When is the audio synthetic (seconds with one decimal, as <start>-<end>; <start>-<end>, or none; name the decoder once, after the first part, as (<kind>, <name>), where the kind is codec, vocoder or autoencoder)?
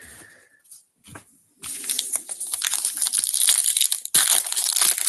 none